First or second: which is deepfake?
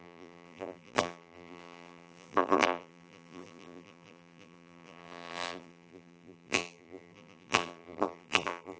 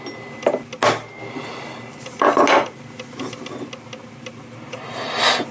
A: first